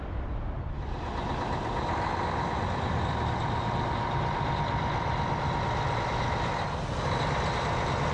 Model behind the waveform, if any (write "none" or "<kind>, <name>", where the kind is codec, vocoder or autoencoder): none